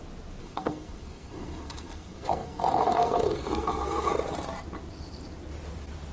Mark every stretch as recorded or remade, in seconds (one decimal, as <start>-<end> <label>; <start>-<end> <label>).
0.0-0.4 recorded; 0.4-4.1 remade; 4.1-6.1 recorded

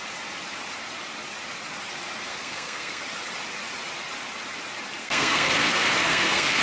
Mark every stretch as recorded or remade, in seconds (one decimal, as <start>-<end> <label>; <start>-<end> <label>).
0.0-2.3 recorded; 2.3-3.0 remade; 3.0-5.0 recorded; 5.0-6.6 remade

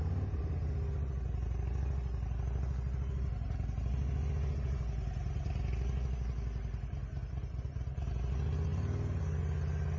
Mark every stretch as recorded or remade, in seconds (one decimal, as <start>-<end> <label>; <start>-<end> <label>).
0.0-10.0 recorded

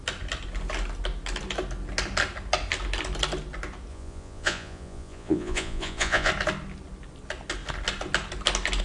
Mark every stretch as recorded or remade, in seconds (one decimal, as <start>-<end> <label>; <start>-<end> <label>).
0.0-3.9 recorded; 3.9-6.3 remade; 6.3-8.8 recorded

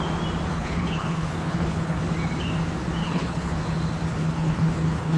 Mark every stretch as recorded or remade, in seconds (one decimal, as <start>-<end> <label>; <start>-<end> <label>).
0.0-0.5 recorded; 0.5-2.0 remade; 2.0-3.0 recorded; 3.0-3.6 remade; 3.6-4.2 recorded; 4.2-5.2 remade

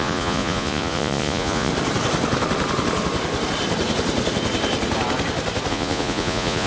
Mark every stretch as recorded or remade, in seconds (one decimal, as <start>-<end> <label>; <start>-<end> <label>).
0.0-1.7 remade; 1.7-5.7 recorded; 5.7-6.7 remade

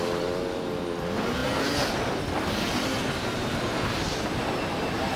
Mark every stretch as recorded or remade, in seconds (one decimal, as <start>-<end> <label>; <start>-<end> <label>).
0.0-5.2 recorded

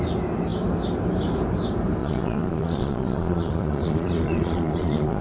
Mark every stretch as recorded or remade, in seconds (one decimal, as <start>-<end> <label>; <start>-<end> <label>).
0.0-2.0 recorded; 2.0-5.2 remade